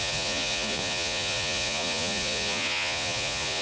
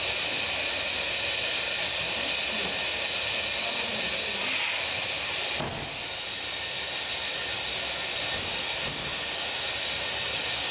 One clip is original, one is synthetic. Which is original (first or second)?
second